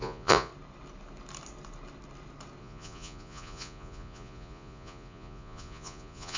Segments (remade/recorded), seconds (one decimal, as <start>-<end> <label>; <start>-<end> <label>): 0.0-0.5 remade; 0.5-2.6 recorded; 2.6-6.4 remade